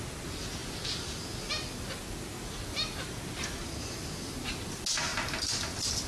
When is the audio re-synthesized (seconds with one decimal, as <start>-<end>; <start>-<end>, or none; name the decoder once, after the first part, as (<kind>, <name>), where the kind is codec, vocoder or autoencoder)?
none